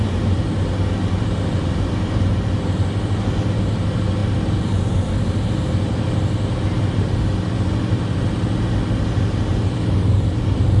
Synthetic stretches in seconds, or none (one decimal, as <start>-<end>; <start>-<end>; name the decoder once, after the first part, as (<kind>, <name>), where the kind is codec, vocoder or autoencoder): none